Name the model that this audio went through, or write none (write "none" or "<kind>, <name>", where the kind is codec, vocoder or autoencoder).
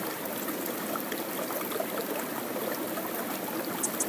none